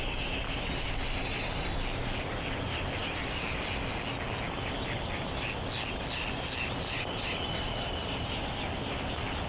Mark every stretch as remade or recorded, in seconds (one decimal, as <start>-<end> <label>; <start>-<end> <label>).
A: 0.0-9.5 recorded